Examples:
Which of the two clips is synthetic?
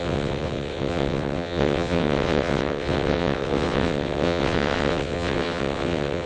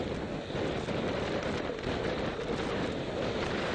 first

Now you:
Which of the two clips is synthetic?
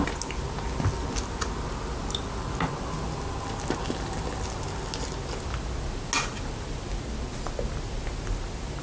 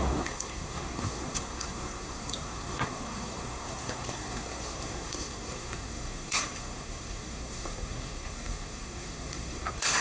second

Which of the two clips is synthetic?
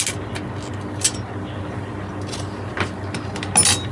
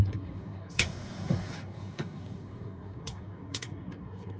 second